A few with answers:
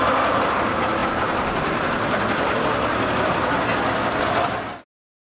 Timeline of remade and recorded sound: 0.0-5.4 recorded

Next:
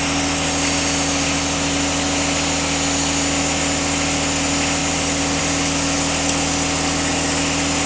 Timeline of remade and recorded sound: 0.0-7.9 recorded